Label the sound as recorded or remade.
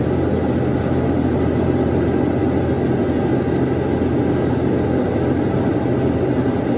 recorded